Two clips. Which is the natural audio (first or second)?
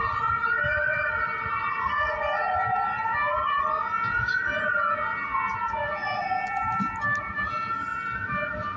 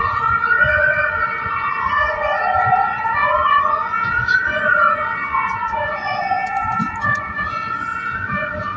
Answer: first